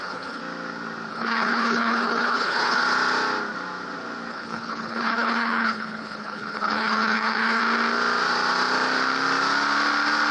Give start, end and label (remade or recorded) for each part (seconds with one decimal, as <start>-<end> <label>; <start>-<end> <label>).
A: 0.0-0.4 remade; 0.4-1.1 recorded; 1.1-2.8 remade; 2.8-4.3 recorded; 4.3-7.6 remade; 7.6-10.3 recorded